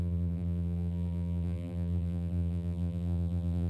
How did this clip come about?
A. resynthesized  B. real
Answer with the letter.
A